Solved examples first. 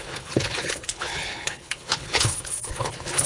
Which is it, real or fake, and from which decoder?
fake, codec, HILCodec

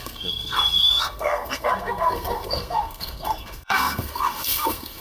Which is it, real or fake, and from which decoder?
fake, codec, SNAC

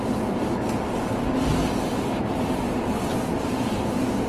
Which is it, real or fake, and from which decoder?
real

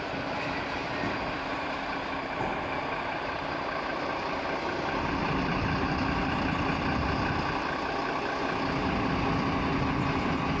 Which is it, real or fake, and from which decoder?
real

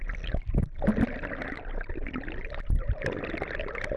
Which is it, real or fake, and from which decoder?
real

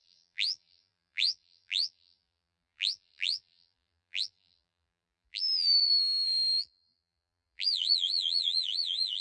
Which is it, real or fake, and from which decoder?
fake, vocoder, BigVGAN v2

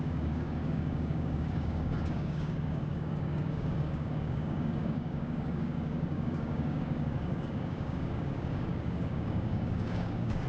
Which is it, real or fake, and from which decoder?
fake, codec, DAC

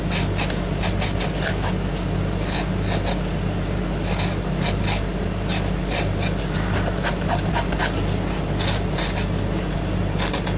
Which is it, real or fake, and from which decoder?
real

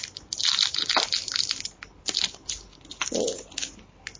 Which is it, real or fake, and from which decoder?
real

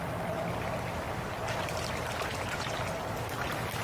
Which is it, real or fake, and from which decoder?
real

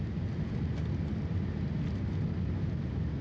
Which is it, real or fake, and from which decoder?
real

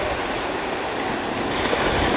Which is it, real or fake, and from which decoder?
real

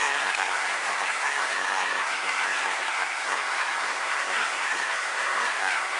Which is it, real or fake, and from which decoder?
fake, codec, SNAC